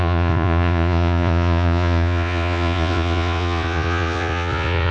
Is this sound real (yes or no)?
no